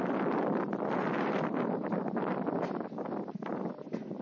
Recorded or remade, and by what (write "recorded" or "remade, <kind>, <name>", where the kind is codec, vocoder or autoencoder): recorded